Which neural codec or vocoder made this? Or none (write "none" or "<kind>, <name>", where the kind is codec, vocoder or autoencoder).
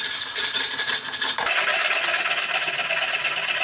none